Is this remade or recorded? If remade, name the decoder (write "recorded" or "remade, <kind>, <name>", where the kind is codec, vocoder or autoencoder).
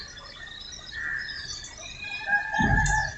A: recorded